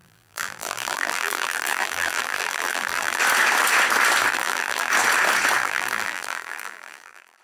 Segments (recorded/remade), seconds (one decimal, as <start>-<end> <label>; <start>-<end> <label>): 0.0-3.2 remade; 3.2-4.3 recorded; 4.3-4.9 remade; 4.9-5.6 recorded; 5.6-7.4 remade